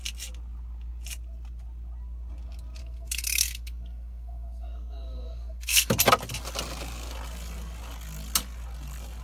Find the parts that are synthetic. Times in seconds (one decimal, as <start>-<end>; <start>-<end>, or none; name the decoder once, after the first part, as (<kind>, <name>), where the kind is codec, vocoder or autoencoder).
2.8-5.9 (codec, SNAC)